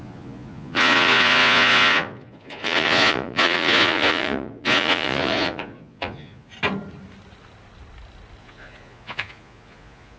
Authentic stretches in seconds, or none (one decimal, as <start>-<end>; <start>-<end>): 6.5-8.4